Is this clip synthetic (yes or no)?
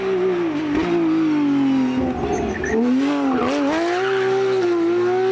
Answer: no